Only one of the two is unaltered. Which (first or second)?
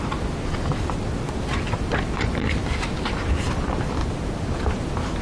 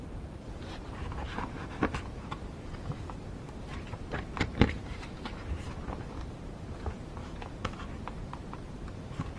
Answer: first